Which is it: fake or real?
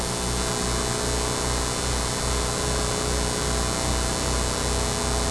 real